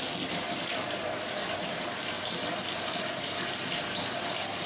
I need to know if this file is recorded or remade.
recorded